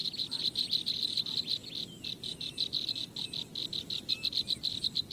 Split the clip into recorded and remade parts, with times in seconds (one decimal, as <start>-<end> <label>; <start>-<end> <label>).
0.0-5.1 recorded